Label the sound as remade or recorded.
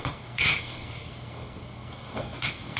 remade